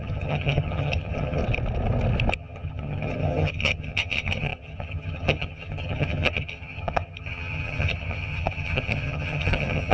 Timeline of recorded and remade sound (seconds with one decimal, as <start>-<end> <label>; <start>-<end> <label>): 0.0-1.4 remade; 1.4-2.3 recorded; 2.3-9.9 remade